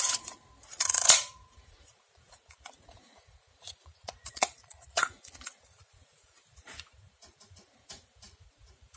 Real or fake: fake